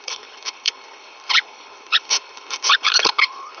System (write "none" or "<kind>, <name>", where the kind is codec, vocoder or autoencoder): codec, HILCodec